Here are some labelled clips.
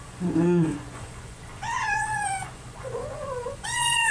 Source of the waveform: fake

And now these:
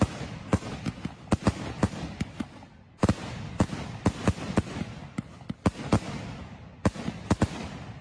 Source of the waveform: real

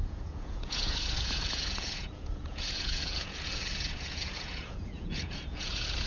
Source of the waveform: fake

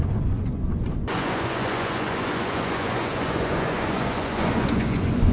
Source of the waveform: fake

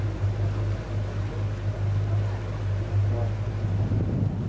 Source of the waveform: real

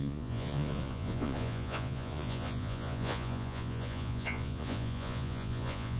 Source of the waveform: fake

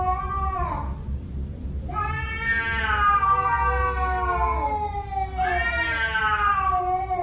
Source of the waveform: real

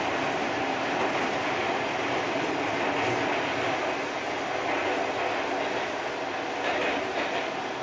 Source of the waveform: real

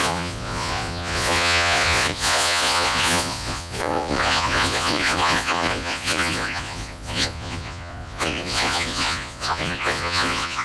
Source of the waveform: fake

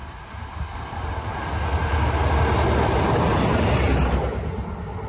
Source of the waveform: real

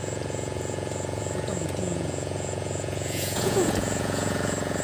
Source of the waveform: fake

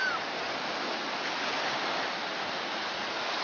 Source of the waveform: real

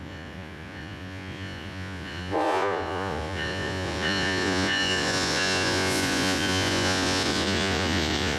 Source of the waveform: fake